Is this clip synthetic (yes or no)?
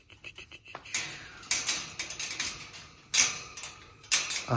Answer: no